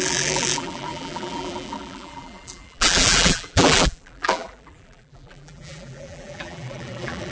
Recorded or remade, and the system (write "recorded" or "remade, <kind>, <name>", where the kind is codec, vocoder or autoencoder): remade, vocoder, BigVGAN v2